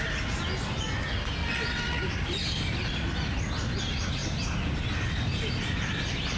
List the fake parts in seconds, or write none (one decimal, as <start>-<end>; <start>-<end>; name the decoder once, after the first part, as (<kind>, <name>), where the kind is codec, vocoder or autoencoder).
1.4-2.0 (vocoder, WaveNeXt)